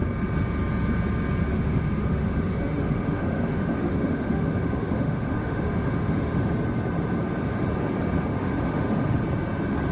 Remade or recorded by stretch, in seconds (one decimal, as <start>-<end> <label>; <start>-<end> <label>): 0.0-1.5 recorded; 1.5-6.5 remade; 6.5-8.3 recorded; 8.3-9.2 remade; 9.2-9.9 recorded